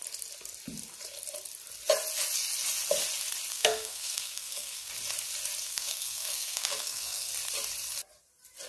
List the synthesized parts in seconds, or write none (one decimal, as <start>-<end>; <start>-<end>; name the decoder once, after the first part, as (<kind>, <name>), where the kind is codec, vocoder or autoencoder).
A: 3.5-4.9 (codec, SNAC); 5.6-7.3